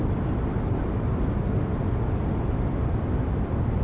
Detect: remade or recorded recorded